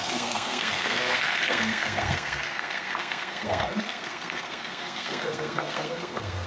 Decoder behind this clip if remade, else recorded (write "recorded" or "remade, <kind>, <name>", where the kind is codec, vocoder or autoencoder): remade, codec, SNAC